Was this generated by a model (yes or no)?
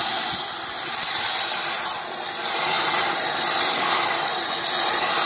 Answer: no